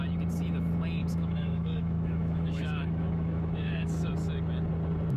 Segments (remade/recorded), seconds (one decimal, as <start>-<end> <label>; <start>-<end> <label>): 0.0-1.0 recorded; 1.0-4.1 remade; 4.1-5.2 recorded

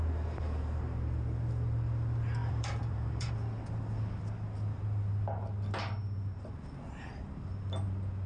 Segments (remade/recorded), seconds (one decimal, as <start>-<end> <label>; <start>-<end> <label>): 0.0-2.4 recorded; 2.4-3.3 remade; 3.3-8.3 recorded